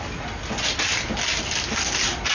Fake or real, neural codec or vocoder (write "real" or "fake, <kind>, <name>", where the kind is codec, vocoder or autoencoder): real